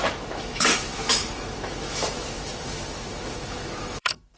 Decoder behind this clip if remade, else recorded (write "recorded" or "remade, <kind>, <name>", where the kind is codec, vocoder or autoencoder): remade, autoencoder, DAC-VAE